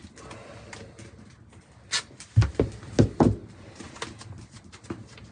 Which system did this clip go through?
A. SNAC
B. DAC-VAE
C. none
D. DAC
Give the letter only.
C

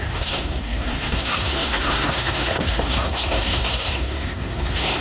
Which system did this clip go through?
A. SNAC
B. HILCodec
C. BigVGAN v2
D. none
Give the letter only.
A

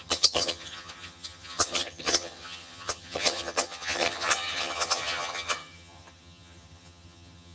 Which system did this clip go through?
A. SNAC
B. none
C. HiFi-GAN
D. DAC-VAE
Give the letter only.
C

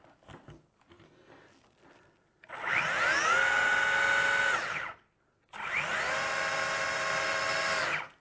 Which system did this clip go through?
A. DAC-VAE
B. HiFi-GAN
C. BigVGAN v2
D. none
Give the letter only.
D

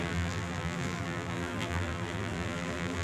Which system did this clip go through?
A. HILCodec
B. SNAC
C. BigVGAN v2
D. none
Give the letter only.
C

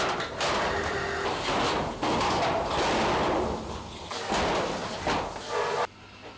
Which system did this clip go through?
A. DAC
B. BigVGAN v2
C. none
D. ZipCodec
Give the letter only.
C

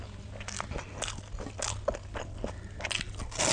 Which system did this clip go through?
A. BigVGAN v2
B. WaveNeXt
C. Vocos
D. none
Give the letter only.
D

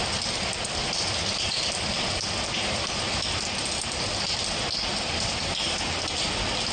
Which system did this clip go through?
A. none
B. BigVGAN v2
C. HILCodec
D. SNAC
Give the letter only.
A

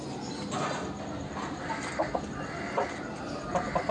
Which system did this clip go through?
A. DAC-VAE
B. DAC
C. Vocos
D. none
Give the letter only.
D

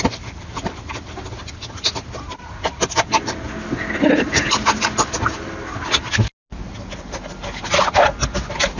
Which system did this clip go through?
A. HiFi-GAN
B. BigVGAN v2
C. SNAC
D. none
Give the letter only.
D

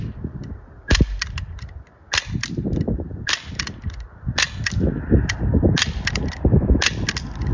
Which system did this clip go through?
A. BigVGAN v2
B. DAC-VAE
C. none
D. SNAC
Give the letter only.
C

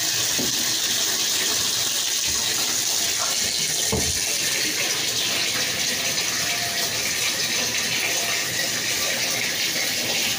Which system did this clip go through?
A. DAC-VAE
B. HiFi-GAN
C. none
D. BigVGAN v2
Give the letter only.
C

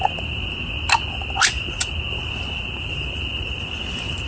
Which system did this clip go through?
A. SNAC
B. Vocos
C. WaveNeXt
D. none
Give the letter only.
D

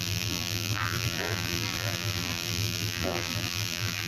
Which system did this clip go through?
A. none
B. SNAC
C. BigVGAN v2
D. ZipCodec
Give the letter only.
C